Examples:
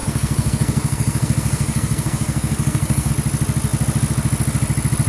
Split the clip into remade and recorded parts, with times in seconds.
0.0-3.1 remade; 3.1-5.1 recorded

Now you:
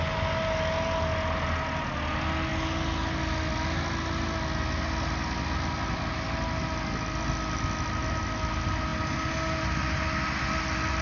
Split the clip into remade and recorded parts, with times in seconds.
0.0-11.0 recorded

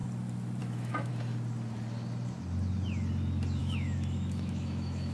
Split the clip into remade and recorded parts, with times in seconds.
0.0-0.6 recorded; 0.6-1.1 remade; 1.1-3.6 recorded; 3.6-5.1 remade

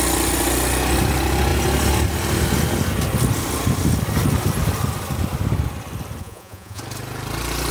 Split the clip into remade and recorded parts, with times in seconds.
0.0-6.2 recorded; 6.2-6.8 remade; 6.8-7.7 recorded

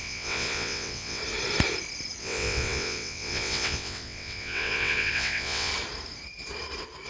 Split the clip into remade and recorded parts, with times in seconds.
0.0-1.2 remade; 1.2-2.2 recorded; 2.2-5.7 remade; 5.7-7.1 recorded

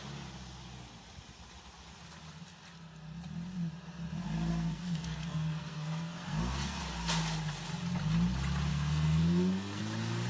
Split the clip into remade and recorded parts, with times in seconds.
0.0-4.5 recorded; 4.5-6.8 remade; 6.8-8.7 recorded; 8.7-9.8 remade; 9.8-10.3 recorded

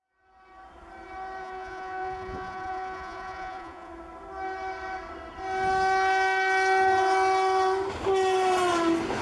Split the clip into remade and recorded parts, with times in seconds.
0.0-1.4 recorded; 1.4-3.9 remade; 3.9-9.2 recorded